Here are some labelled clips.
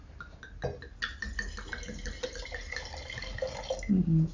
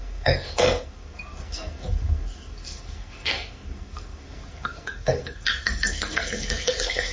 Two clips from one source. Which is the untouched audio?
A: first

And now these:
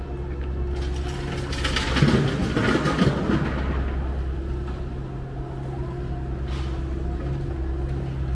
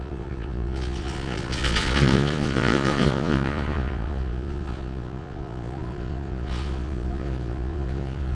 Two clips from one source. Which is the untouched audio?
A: first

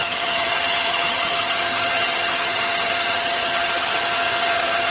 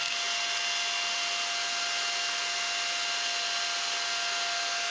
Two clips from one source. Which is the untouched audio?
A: second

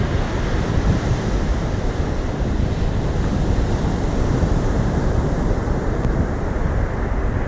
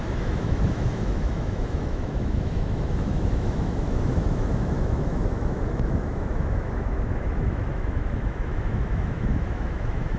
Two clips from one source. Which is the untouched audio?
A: first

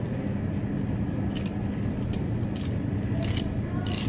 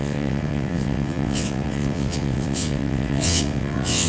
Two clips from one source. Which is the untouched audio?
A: first